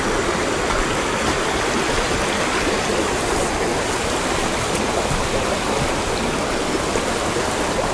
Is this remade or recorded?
recorded